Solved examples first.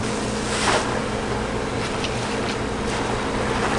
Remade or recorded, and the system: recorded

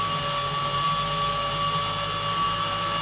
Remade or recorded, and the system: recorded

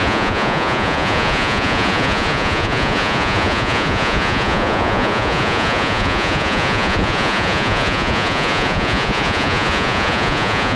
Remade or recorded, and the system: remade, vocoder, Vocos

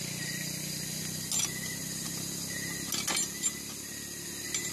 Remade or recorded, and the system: recorded